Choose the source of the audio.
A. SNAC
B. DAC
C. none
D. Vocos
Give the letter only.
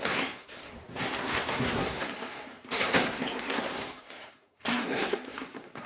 A